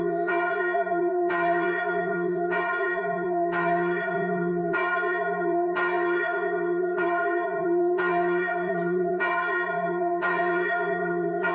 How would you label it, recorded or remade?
remade